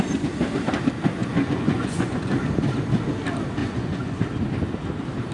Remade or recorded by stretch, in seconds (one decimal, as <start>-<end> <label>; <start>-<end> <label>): 0.0-1.2 recorded; 1.2-2.3 remade; 2.3-3.6 recorded; 3.6-4.2 remade; 4.2-5.3 recorded